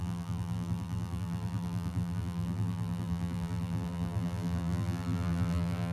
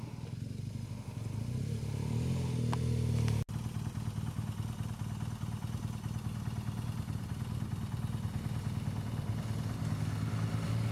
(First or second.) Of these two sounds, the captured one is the second